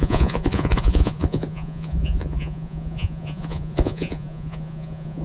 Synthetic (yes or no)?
yes